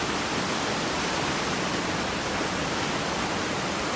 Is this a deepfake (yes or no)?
no